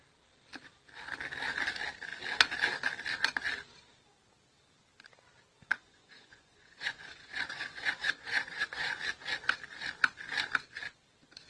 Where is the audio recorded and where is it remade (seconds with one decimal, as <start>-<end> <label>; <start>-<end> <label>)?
0.0-5.7 recorded; 5.7-9.0 remade; 9.0-11.5 recorded